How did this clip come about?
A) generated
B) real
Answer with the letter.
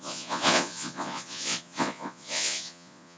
A